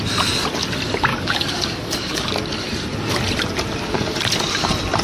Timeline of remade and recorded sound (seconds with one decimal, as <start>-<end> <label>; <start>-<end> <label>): 0.0-1.1 recorded; 1.1-2.3 remade; 2.3-5.0 recorded